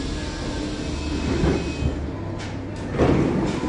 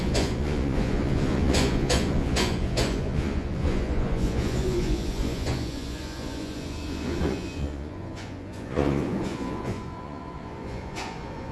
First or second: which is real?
first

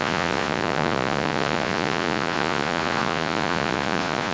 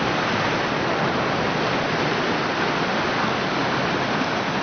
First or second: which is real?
second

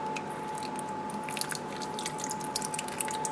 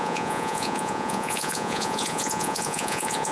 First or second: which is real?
first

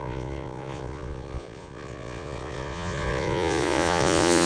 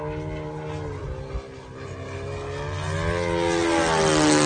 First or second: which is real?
second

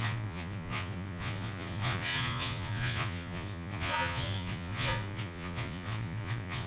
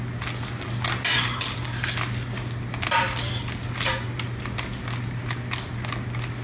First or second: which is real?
second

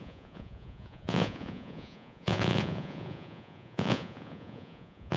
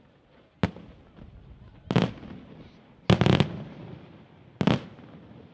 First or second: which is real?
second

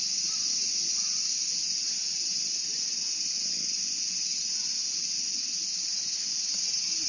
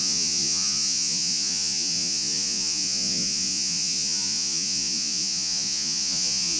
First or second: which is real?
first